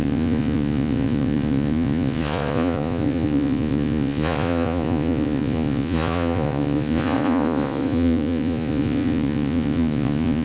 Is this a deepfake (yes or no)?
yes